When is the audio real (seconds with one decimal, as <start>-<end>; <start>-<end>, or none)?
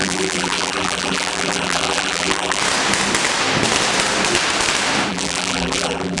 2.6-5.1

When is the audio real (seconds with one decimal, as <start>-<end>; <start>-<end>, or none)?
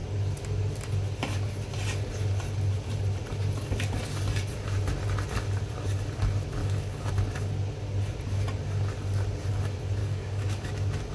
0.0-6.6; 7.1-10.0; 10.7-11.1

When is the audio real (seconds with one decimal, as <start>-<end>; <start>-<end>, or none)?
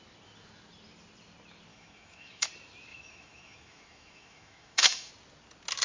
0.0-1.7; 2.5-2.9; 5.1-5.8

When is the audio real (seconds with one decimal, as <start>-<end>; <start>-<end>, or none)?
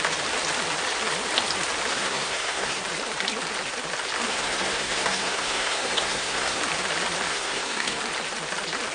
0.0-1.9; 2.8-4.3; 6.6-7.3; 8.0-8.9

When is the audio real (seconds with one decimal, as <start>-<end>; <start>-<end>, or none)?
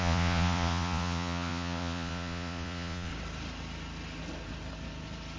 3.1-5.4